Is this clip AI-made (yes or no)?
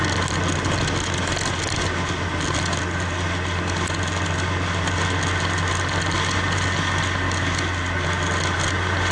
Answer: no